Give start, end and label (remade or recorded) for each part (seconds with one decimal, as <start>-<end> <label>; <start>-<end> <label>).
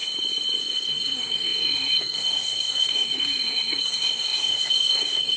0.0-0.6 recorded; 0.6-5.4 remade